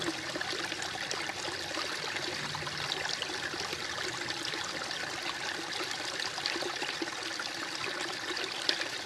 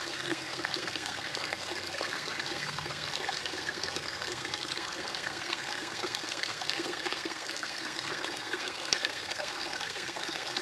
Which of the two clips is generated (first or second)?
second